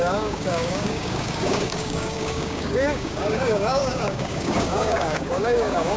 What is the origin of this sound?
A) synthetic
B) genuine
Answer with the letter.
A